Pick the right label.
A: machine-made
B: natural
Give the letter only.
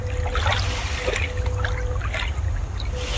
B